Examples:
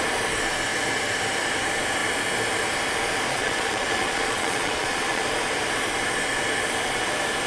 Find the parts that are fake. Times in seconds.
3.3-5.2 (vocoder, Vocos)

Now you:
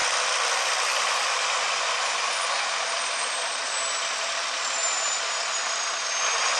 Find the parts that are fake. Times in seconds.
none

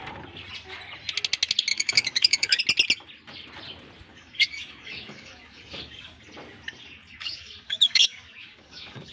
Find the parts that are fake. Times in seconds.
1.7-2.6 (codec, DAC); 4.1-6.2; 7.0-9.1